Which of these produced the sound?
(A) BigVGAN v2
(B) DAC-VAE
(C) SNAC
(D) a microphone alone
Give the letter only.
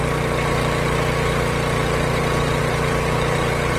D